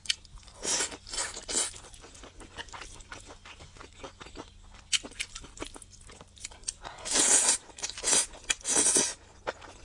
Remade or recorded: recorded